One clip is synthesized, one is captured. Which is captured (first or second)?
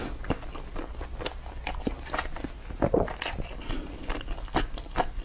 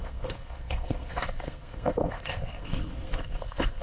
first